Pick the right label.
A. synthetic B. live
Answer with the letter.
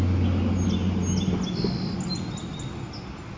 B